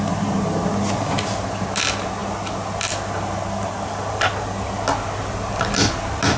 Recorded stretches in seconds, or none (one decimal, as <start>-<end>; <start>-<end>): 0.0-6.4